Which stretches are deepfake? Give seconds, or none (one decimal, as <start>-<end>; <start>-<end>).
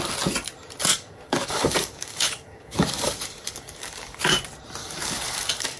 0.9-4.2; 4.8-5.8